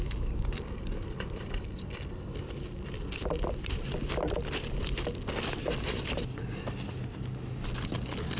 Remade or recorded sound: recorded